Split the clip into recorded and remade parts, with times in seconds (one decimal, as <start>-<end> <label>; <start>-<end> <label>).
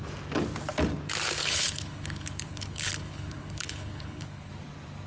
0.0-1.4 recorded; 1.4-4.5 remade; 4.5-5.1 recorded